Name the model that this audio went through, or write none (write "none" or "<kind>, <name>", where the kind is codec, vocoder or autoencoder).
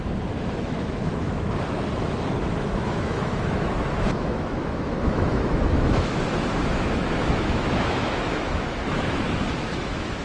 autoencoder, DAC-VAE